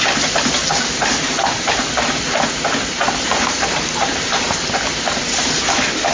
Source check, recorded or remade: recorded